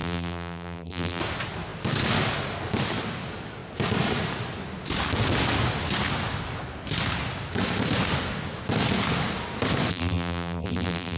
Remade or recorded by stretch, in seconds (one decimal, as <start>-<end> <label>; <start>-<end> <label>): 0.0-1.2 remade; 1.2-9.9 recorded; 9.9-11.2 remade